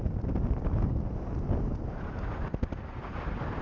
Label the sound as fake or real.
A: real